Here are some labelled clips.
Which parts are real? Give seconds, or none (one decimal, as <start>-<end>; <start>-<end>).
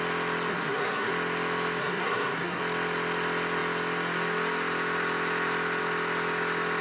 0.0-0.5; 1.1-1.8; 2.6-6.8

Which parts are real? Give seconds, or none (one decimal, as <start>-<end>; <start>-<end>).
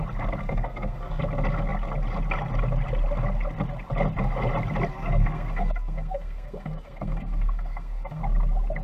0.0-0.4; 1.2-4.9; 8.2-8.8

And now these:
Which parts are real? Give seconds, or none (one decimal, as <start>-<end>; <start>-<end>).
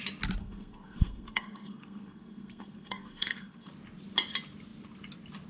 0.0-0.4; 3.7-5.5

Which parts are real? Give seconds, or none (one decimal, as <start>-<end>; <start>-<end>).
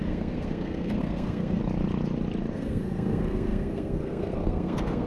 1.6-2.5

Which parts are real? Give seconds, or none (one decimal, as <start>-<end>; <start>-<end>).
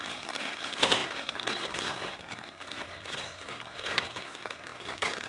none